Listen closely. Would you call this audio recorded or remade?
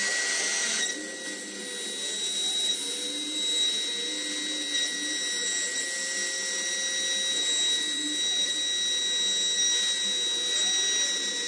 recorded